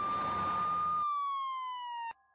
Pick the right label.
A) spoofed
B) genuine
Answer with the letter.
B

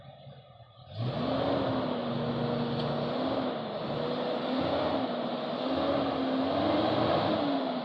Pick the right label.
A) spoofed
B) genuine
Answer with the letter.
B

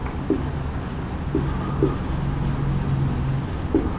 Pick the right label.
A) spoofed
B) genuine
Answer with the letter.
B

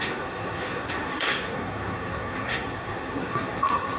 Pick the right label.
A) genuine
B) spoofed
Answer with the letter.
B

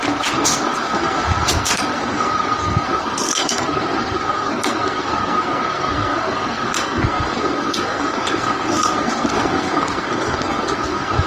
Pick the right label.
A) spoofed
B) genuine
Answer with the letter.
A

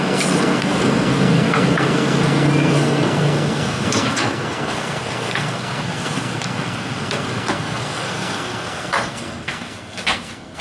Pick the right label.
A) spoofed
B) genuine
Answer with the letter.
A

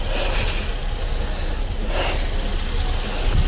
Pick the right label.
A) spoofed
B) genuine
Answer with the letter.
B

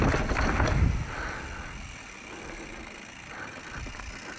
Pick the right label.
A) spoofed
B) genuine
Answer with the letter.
B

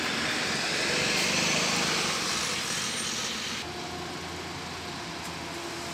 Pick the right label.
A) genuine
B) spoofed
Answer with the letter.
A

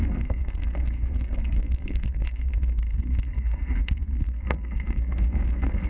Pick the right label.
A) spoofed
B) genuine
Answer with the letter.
A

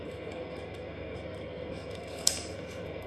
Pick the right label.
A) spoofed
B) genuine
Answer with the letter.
A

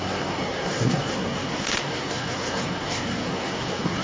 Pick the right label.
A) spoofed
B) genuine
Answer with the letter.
A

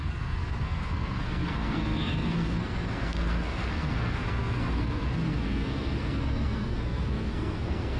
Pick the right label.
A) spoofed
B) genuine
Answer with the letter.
A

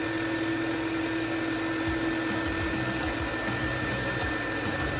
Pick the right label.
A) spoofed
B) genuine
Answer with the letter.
B